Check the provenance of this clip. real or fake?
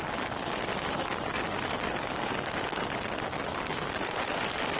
real